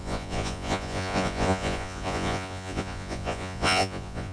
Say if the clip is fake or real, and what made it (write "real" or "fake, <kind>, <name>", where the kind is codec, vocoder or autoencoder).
fake, vocoder, Vocos